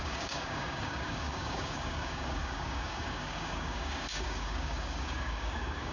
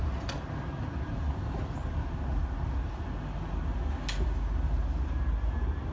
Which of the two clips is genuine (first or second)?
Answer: second